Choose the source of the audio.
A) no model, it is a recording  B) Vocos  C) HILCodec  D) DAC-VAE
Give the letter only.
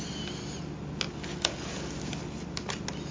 A